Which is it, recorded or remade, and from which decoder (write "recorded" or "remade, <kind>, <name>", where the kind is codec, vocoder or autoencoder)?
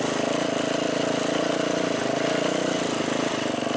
recorded